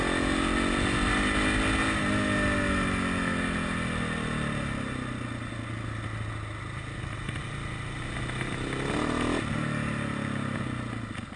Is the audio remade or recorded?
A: recorded